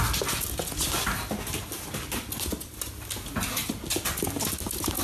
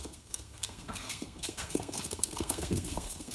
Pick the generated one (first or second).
second